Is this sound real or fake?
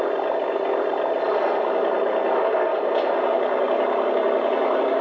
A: real